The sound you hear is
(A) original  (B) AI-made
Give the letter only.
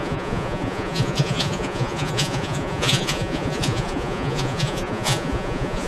B